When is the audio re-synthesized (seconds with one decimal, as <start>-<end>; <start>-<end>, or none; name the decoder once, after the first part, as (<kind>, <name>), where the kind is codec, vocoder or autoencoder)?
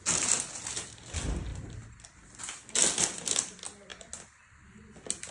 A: none